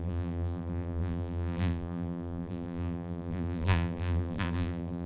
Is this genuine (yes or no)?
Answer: no